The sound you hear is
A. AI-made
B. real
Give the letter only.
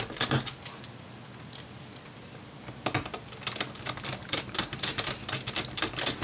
B